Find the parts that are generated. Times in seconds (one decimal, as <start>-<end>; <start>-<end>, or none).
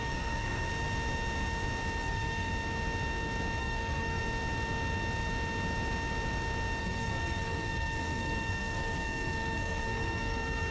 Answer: 0.0-0.7; 2.0-2.5; 3.6-4.2; 6.8-10.7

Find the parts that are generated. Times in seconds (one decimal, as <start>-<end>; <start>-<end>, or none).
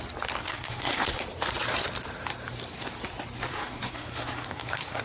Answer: 0.4-1.1; 3.5-5.0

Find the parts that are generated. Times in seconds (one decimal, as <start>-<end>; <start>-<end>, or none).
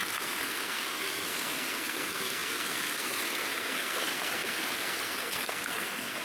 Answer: 0.0-6.2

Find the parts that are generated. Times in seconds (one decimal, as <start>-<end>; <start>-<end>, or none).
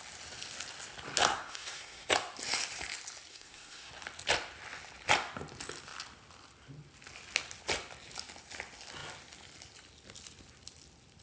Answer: 1.3-2.1; 3.3-3.9